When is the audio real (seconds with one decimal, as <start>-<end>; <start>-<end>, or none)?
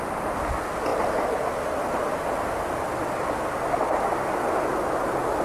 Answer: 0.0-5.4